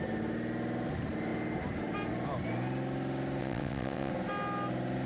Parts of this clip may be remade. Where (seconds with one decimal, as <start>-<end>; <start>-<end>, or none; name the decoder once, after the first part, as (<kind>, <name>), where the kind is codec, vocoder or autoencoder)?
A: 3.4-4.1 (vocoder, WaveNeXt)